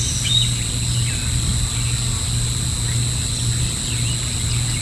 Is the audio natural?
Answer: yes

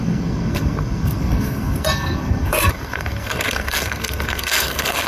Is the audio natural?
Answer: no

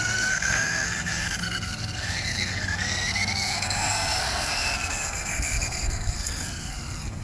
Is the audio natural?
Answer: no